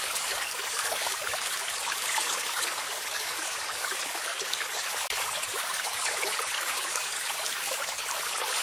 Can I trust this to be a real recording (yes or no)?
no